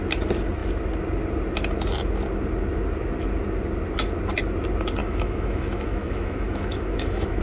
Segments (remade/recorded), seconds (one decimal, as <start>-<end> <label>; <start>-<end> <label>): 0.0-5.0 recorded; 5.0-7.4 remade